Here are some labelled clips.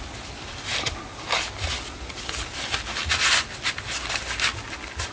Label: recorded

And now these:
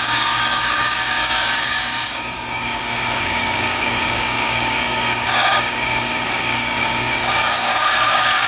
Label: remade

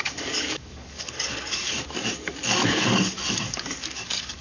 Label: remade